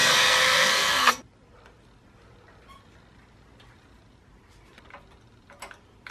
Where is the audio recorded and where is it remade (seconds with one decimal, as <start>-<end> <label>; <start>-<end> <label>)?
0.0-1.2 remade; 1.2-6.1 recorded